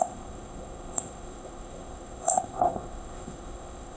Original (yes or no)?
no